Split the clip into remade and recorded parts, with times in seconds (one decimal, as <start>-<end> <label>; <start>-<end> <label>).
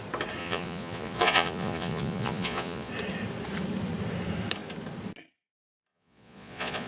0.0-0.4 recorded; 0.4-2.9 remade; 2.9-5.9 recorded; 5.9-6.9 remade